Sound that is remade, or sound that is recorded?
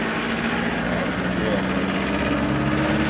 recorded